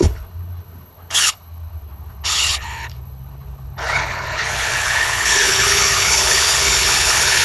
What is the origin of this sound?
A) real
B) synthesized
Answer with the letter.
B